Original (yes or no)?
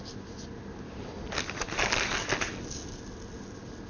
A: yes